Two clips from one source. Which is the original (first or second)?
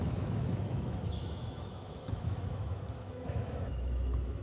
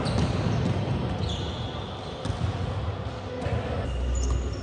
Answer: second